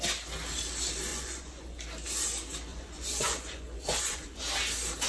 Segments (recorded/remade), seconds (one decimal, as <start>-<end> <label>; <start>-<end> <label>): 0.0-1.1 recorded; 1.1-1.8 remade; 1.8-2.7 recorded; 2.7-4.4 remade; 4.4-5.1 recorded